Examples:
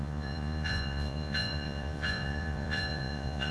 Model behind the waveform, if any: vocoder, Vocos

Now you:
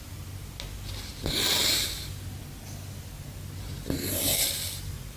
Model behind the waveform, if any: none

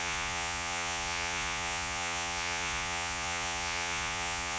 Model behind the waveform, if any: vocoder, Vocos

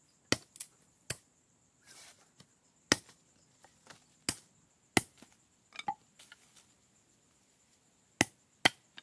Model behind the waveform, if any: none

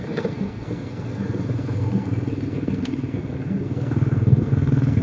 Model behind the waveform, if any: codec, SNAC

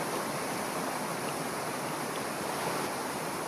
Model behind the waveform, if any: none